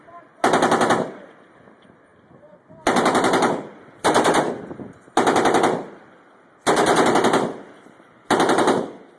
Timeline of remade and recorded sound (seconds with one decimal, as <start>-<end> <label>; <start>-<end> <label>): 0.0-9.2 recorded